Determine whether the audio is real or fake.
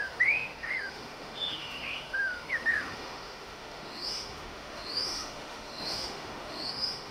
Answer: fake